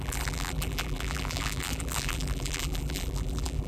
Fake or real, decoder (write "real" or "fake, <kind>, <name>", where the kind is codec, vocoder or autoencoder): fake, vocoder, BigVGAN v2